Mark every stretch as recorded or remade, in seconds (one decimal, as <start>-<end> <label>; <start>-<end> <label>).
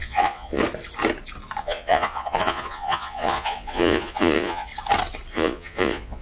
0.0-0.6 remade; 0.6-1.6 recorded; 1.6-4.7 remade; 4.7-5.3 recorded; 5.3-6.2 remade